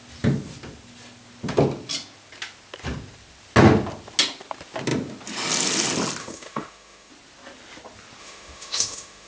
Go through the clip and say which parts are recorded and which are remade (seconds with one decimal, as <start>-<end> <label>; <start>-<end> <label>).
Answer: 0.0-6.2 recorded; 6.2-7.1 remade; 7.1-8.2 recorded; 8.2-9.3 remade